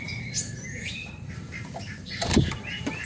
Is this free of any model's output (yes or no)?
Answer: no